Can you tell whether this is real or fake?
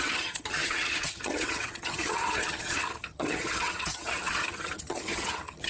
fake